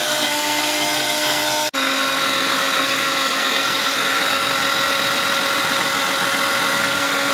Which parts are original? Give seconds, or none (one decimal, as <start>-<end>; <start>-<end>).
4.5-6.7